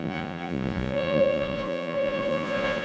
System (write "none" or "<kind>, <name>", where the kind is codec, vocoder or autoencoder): vocoder, Vocos